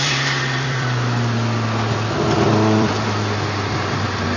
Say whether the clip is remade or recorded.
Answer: remade